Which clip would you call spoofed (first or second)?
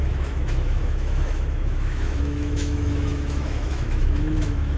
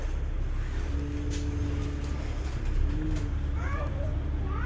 first